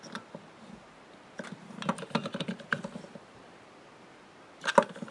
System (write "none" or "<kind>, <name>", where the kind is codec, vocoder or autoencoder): none